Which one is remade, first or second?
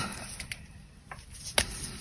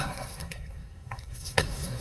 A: second